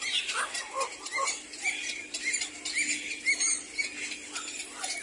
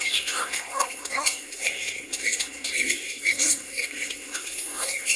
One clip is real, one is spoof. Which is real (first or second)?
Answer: first